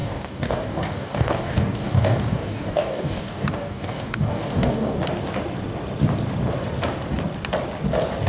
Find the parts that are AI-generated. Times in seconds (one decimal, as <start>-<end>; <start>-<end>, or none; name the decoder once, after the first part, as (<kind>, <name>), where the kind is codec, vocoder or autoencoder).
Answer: 0.0-5.0 (codec, DAC)